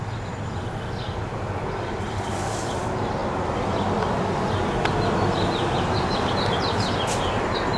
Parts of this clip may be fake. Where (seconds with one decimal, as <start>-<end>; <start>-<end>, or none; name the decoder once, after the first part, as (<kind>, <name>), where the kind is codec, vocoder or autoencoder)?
none